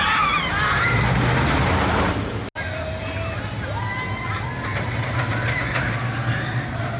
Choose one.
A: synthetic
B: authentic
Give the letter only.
B